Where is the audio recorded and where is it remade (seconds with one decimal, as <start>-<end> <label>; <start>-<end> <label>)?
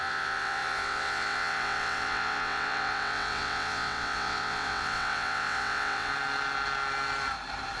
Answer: 0.0-6.1 remade; 6.1-7.8 recorded